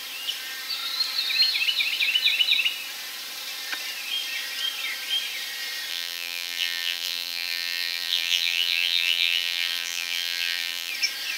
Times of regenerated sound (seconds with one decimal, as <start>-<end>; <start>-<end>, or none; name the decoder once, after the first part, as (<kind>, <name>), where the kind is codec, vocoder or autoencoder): 5.9-10.9 (vocoder, BigVGAN v2)